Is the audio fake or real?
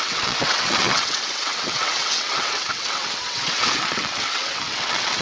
fake